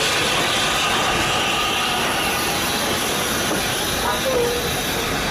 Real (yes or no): yes